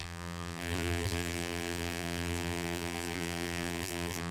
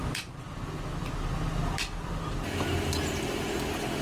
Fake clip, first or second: first